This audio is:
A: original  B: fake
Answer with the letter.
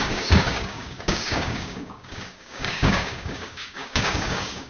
B